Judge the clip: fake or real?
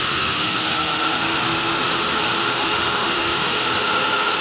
fake